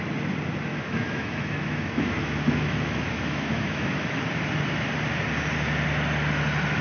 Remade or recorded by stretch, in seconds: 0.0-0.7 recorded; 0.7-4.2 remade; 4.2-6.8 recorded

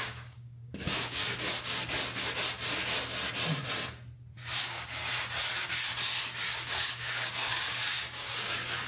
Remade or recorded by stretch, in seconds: 0.0-1.2 remade; 1.2-4.6 recorded; 4.6-5.0 remade; 5.0-6.5 recorded; 6.5-8.9 remade